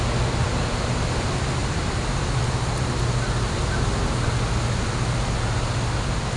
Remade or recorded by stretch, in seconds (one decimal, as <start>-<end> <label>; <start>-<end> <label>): 0.0-6.4 recorded